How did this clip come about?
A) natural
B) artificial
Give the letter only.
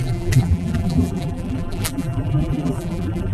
B